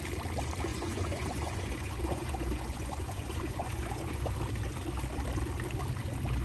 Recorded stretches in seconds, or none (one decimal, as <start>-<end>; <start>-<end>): 0.0-0.7; 4.3-6.4